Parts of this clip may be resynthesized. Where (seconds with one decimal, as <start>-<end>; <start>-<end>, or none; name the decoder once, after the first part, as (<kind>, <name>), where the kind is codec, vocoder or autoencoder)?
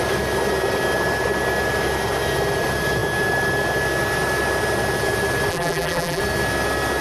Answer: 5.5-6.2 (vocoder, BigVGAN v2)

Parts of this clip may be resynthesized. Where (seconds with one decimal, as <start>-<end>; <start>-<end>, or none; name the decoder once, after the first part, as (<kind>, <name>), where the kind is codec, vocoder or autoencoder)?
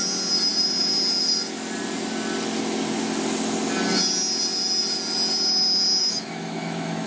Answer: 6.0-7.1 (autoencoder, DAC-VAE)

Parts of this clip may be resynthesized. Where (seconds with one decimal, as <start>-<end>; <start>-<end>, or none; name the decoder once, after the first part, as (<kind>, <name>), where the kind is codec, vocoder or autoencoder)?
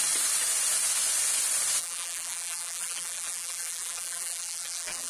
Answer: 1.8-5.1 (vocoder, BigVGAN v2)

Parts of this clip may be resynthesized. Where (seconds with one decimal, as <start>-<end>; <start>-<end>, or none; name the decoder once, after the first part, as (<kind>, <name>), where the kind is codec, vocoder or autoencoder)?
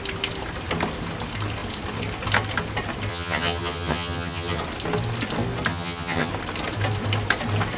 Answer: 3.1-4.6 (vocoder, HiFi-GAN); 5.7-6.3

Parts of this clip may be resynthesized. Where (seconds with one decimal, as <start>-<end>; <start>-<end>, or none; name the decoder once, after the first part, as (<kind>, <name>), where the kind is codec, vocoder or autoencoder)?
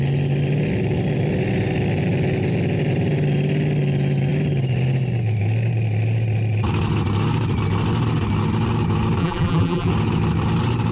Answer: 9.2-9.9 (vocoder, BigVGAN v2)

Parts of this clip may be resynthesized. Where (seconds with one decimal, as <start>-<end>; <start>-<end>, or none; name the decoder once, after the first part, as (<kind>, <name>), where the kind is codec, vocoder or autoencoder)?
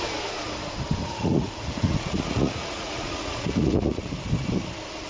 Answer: 1.0-4.1 (vocoder, Vocos)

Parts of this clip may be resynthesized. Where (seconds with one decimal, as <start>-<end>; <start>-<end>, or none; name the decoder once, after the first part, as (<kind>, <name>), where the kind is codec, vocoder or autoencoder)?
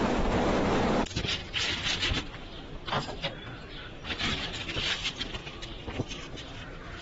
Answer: 0.0-7.0 (vocoder, BigVGAN v2)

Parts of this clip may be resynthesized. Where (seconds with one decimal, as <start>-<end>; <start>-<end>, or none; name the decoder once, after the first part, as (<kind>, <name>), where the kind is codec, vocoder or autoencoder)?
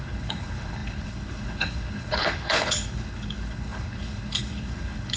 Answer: 0.0-5.2 (codec, HILCodec)